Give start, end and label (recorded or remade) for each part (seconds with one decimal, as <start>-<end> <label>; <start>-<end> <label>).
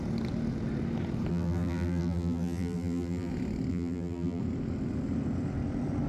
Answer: 0.0-1.3 recorded; 1.3-3.3 remade; 3.3-3.7 recorded; 3.7-4.4 remade; 4.4-6.1 recorded